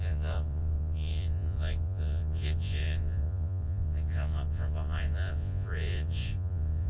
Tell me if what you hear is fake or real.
fake